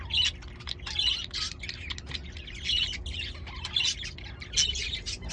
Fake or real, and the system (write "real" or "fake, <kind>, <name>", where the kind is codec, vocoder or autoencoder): real